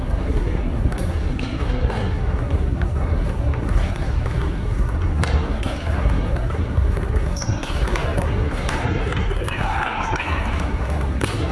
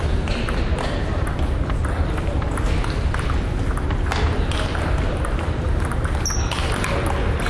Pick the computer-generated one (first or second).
first